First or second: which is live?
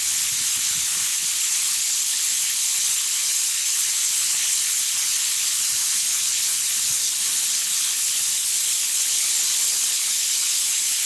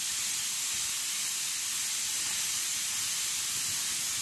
second